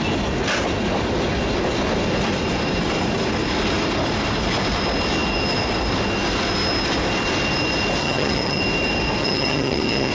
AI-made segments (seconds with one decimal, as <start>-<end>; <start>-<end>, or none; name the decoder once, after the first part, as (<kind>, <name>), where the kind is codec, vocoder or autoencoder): 8.0-8.6 (vocoder, HiFi-GAN); 9.2-10.1